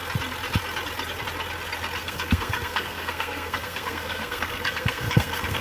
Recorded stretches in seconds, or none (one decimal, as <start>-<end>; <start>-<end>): 0.0-2.0